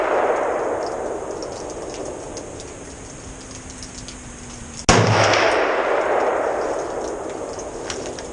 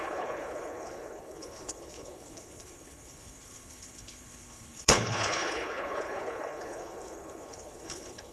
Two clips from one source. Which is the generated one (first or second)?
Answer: second